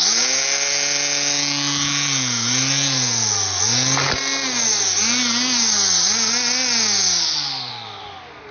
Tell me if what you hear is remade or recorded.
recorded